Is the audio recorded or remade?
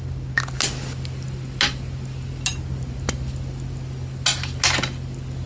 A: recorded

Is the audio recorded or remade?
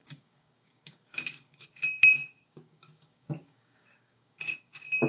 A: remade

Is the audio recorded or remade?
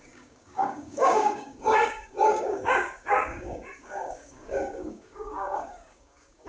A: remade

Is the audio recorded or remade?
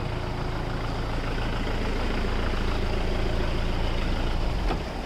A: recorded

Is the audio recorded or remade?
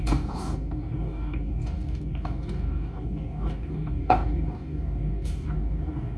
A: remade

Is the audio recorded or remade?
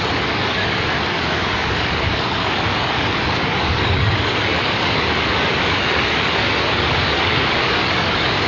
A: remade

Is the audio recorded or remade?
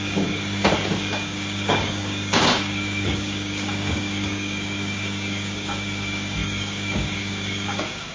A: remade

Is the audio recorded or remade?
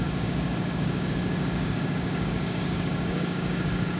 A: remade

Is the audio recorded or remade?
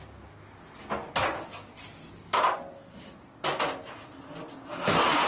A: recorded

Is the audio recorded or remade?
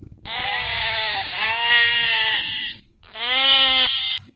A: remade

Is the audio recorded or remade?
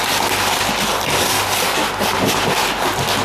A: recorded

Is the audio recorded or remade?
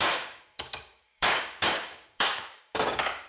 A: remade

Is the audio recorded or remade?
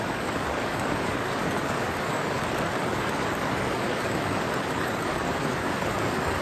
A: remade